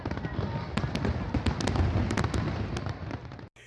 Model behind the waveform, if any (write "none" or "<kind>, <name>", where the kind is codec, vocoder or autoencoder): none